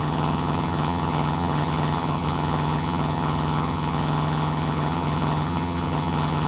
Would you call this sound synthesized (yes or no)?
yes